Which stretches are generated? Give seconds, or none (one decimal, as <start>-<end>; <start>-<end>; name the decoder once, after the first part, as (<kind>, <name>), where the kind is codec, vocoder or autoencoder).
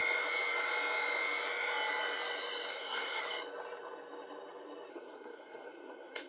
2.7-3.2 (codec, SNAC); 4.9-6.3